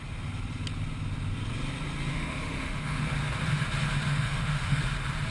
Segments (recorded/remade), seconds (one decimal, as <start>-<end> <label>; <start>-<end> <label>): 0.0-2.1 recorded; 2.1-3.0 remade; 3.0-4.1 recorded; 4.1-4.8 remade; 4.8-5.3 recorded